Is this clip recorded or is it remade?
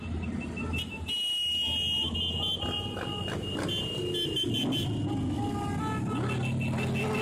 recorded